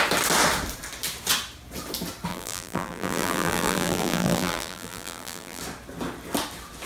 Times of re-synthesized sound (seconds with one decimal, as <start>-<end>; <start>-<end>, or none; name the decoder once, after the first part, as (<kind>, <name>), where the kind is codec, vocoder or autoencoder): 2.3-5.6 (vocoder, BigVGAN v2)